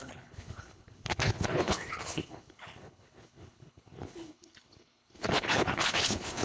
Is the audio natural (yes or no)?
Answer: no